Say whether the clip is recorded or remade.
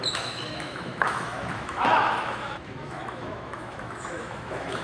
remade